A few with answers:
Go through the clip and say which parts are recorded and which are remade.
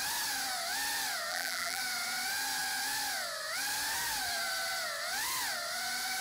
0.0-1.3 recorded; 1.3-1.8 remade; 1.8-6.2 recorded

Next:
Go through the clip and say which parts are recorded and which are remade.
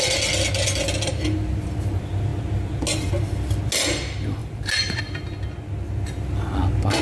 0.0-4.4 recorded; 4.4-5.0 remade; 5.0-7.0 recorded